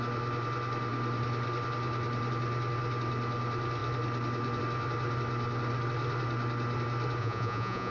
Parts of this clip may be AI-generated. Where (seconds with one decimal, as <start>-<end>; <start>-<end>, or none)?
7.2-7.9